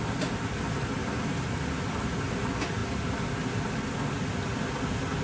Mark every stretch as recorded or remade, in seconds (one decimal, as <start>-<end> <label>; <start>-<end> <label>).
0.0-1.0 recorded; 1.0-1.6 remade; 1.6-5.2 recorded